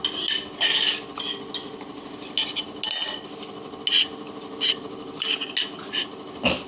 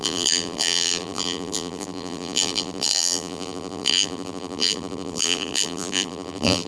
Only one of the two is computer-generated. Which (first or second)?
second